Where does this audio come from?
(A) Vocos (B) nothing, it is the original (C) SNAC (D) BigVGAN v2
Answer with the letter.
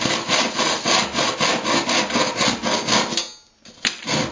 B